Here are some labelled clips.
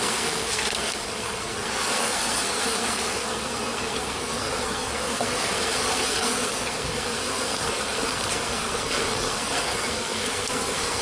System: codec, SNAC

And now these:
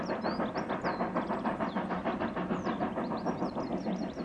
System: none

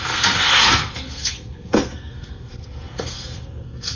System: codec, SNAC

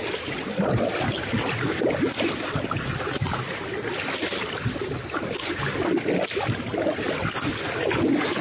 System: none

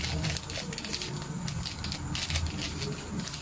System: none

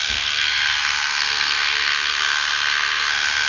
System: codec, SNAC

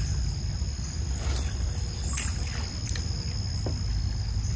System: none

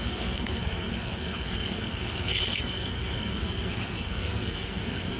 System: codec, SNAC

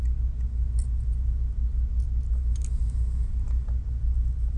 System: none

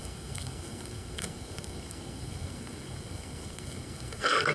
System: codec, SNAC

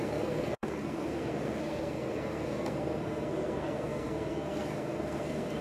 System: codec, SNAC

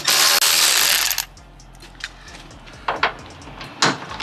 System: none